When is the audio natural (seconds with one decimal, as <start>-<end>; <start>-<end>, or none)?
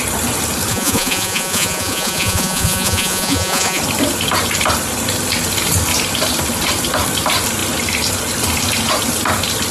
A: 0.0-0.7; 3.8-9.7